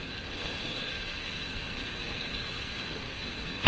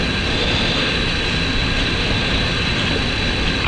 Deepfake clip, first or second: first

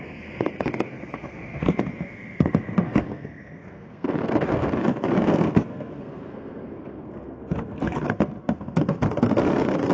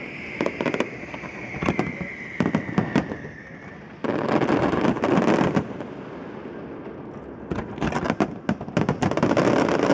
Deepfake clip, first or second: first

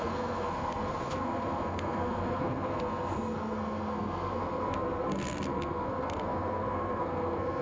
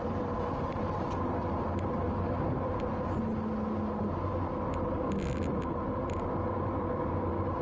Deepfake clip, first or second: first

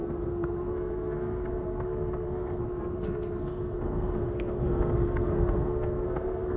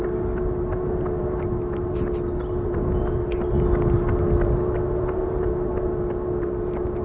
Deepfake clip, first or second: first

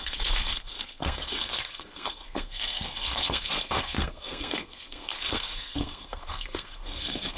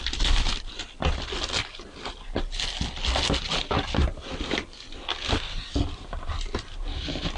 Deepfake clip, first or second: first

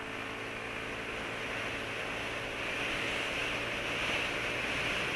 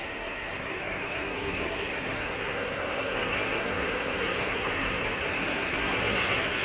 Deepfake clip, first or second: second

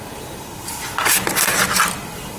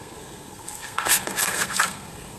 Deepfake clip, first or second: second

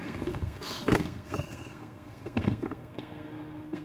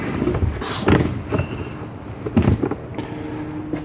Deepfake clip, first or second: first